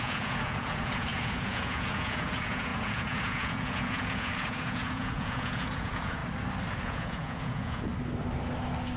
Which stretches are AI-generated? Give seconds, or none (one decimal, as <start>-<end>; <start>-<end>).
0.0-6.2; 6.7-7.9